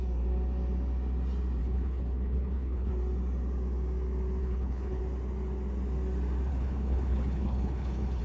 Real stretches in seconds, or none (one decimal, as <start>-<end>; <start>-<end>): 0.0-1.6; 2.9-4.4; 5.0-6.5